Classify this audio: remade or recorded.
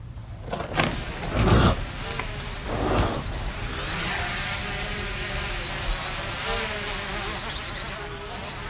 recorded